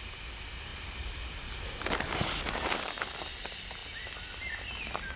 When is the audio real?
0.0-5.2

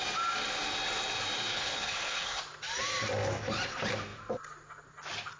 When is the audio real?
0.0-1.5; 2.4-5.4